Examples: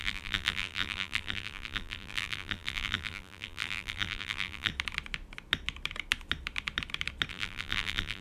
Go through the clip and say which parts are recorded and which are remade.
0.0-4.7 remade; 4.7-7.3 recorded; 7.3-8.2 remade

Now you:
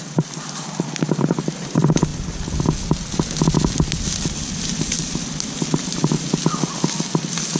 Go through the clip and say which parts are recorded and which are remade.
0.0-7.6 recorded